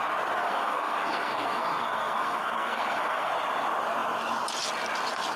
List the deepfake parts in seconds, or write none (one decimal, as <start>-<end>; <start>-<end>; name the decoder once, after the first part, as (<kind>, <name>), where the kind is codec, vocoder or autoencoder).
0.4-3.3 (codec, SNAC)